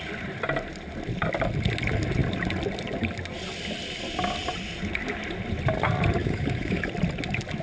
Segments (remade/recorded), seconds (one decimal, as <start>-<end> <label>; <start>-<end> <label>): 0.0-6.2 recorded; 6.2-6.9 remade; 6.9-7.6 recorded